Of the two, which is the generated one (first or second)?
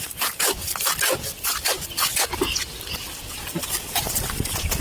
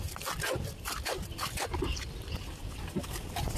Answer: second